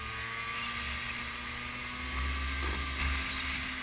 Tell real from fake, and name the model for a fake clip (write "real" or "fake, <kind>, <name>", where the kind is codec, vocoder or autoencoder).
real